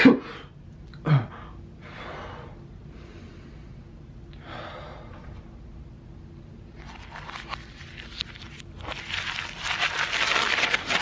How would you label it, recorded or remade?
recorded